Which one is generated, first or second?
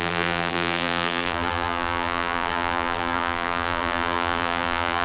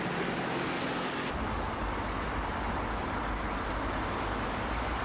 first